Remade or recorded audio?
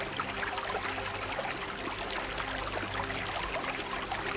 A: recorded